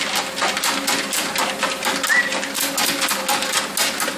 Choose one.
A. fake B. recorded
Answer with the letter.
B